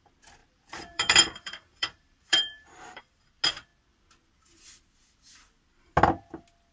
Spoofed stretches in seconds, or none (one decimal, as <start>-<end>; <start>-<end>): 0.4-3.0